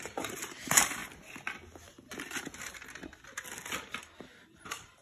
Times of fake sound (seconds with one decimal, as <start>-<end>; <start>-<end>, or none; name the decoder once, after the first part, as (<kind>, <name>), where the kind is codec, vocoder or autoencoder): 0.0-1.0 (vocoder, BigVGAN v2); 4.0-5.0